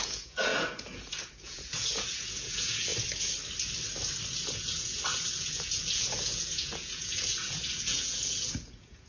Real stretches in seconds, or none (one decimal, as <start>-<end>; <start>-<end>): 2.9-4.3

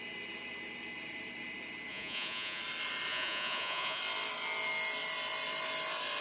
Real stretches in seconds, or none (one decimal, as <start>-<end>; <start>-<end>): 0.0-1.9; 2.6-3.1; 4.0-6.2

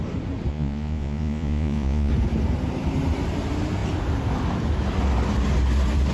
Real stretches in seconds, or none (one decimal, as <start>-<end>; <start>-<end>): 0.0-0.5; 2.1-6.1

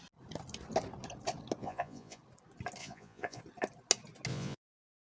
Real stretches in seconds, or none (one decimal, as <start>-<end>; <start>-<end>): 0.0-1.6; 2.2-2.8; 3.4-4.3